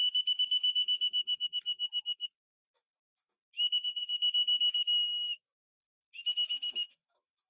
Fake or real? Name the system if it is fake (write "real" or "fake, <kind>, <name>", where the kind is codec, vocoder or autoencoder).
fake, autoencoder, DAC-VAE